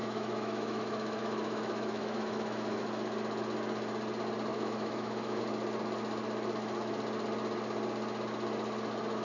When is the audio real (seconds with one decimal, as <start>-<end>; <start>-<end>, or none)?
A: 2.8-4.5; 5.4-9.2